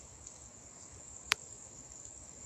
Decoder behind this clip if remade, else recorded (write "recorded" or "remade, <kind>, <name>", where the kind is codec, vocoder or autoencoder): remade, codec, DAC